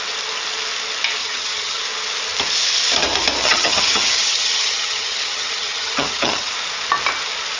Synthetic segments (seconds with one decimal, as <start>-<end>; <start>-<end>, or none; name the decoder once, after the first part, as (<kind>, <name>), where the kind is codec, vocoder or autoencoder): 1.2-1.8 (vocoder, HiFi-GAN); 3.4-6.5